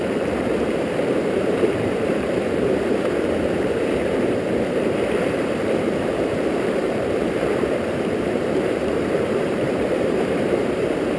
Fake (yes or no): yes